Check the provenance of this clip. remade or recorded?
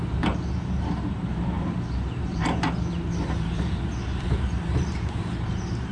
remade